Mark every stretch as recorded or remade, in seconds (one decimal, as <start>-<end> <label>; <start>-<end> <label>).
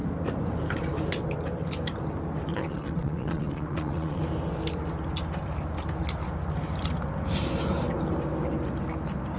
0.0-2.5 recorded; 2.5-4.2 remade; 4.2-9.4 recorded